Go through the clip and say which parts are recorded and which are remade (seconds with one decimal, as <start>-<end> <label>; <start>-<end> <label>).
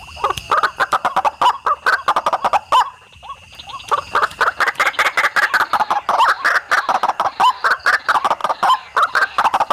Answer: 0.0-9.7 recorded